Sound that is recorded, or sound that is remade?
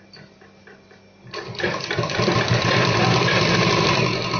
recorded